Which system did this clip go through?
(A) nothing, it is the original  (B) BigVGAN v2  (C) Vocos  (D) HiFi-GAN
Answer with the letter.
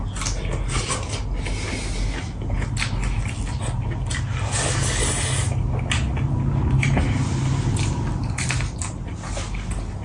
A